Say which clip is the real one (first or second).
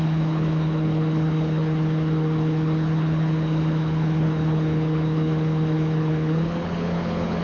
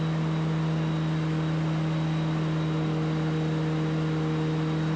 second